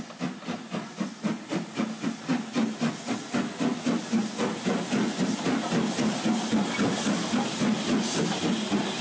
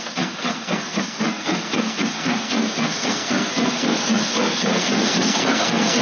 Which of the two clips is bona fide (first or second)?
first